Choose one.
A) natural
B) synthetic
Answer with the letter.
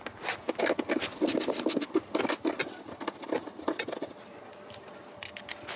A